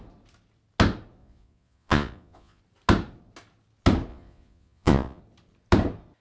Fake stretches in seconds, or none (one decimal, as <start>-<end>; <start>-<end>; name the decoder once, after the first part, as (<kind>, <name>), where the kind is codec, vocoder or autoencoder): 1.2-2.6 (vocoder, Vocos); 4.1-5.2